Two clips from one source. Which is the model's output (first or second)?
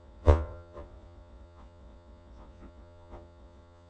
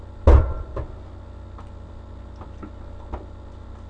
first